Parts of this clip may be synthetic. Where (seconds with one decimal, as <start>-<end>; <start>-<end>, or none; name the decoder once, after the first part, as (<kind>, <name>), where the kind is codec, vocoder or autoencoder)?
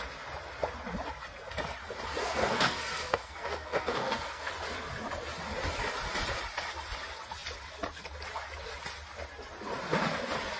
2.2-4.5 (codec, SNAC)